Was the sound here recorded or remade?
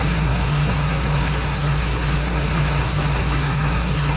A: remade